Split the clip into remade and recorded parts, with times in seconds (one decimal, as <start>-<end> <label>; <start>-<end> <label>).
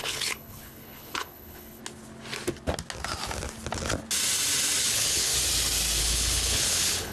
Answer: 0.0-1.8 remade; 1.8-4.8 recorded; 4.8-5.3 remade; 5.3-6.0 recorded; 6.0-7.1 remade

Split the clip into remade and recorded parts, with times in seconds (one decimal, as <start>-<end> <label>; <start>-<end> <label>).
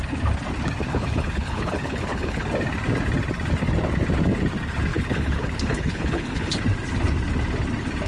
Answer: 0.0-0.9 recorded; 0.9-2.5 remade; 2.5-4.9 recorded; 4.9-6.6 remade; 6.6-8.1 recorded